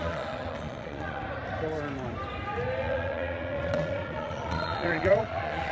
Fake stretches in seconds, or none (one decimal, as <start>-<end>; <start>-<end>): 0.0-1.2; 2.8-5.7